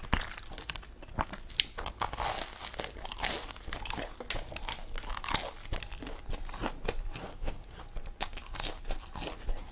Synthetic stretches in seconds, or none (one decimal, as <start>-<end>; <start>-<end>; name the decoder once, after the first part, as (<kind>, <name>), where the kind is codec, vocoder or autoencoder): 7.2-7.8 (codec, SNAC)